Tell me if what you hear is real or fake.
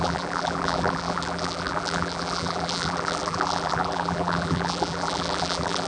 fake